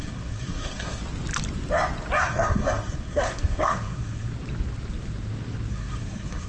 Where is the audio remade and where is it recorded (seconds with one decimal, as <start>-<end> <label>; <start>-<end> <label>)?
0.0-1.0 remade; 1.0-2.2 recorded; 2.2-4.3 remade; 4.3-5.7 recorded; 5.7-6.5 remade

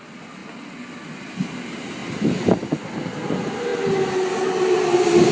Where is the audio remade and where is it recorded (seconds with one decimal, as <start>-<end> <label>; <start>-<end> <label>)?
0.0-5.3 recorded

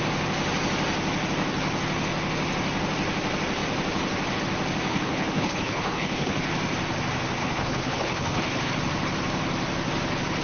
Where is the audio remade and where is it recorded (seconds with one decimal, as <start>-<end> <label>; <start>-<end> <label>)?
0.0-4.9 recorded; 4.9-6.5 remade; 6.5-7.4 recorded; 7.4-8.7 remade; 8.7-10.4 recorded

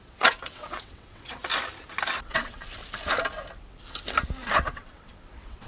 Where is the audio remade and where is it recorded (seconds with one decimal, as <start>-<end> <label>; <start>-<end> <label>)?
0.0-1.4 remade; 1.4-2.2 recorded; 2.2-2.8 remade; 2.8-4.7 recorded; 4.7-5.7 remade

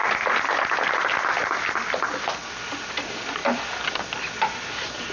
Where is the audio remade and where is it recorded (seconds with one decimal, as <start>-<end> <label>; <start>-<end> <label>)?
0.0-5.1 recorded

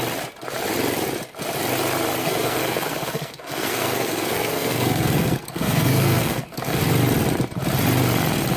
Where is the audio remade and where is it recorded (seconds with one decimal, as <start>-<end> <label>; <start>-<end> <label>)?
0.0-2.2 recorded; 2.2-6.8 remade; 6.8-8.6 recorded

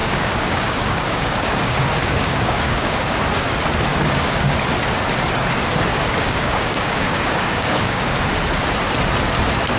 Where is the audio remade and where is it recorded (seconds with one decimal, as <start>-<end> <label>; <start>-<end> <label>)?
0.0-3.2 remade; 3.2-3.9 recorded; 3.9-4.5 remade; 4.5-5.9 recorded; 5.9-8.2 remade; 8.2-9.8 recorded

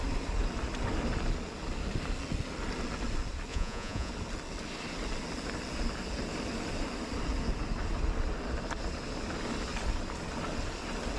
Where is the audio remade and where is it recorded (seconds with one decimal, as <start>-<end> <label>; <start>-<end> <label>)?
0.0-3.5 recorded; 3.5-4.1 remade; 4.1-11.2 recorded